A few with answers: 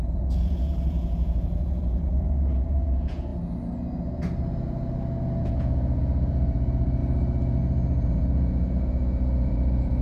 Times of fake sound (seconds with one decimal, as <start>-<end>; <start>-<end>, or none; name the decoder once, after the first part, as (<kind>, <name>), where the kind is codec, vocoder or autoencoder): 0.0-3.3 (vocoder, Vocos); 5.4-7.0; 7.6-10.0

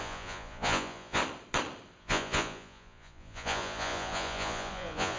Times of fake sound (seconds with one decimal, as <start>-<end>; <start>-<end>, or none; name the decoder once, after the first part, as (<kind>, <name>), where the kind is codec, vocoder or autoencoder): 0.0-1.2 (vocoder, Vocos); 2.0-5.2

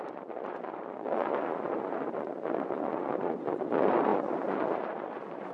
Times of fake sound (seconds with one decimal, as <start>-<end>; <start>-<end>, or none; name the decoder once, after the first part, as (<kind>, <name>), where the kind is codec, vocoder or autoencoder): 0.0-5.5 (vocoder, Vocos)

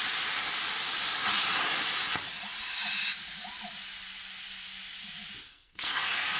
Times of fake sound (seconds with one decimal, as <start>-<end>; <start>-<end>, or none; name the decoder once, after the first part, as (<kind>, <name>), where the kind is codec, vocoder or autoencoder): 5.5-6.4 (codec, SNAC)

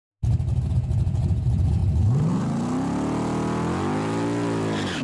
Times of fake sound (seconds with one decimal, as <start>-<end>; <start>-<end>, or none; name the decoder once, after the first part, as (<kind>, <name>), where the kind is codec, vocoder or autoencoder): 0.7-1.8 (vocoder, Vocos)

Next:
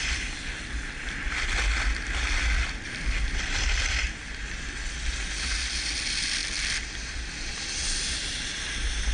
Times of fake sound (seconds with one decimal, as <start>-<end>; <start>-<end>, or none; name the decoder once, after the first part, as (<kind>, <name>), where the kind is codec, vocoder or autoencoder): none

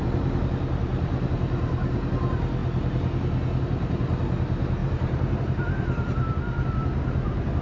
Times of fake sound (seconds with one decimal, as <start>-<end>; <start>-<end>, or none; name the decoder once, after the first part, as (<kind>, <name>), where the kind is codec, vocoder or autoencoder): 0.0-2.6 (vocoder, BigVGAN v2); 3.6-7.6

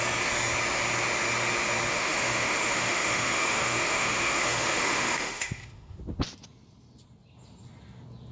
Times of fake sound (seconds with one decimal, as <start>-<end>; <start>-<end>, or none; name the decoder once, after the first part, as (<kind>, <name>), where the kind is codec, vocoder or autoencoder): 1.9-6.0 (autoencoder, DAC-VAE)